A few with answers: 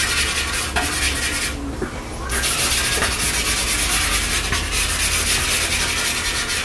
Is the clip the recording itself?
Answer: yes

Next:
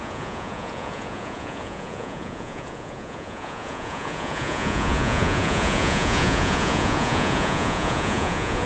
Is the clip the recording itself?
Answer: no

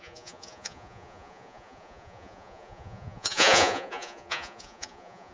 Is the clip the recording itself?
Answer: no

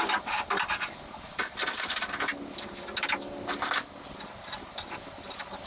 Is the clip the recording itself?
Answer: yes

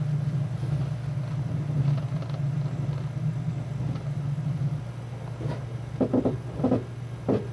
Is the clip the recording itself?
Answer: yes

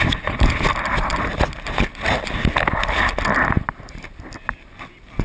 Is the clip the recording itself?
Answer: yes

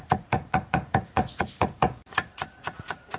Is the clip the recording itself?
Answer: no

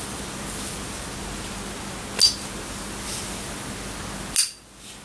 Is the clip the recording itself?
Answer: yes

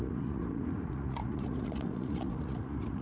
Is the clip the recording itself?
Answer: no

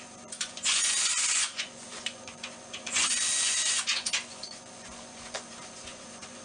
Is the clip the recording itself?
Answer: no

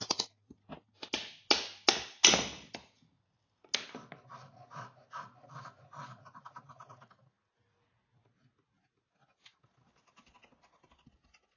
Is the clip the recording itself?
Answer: yes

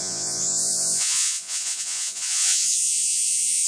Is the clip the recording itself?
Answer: no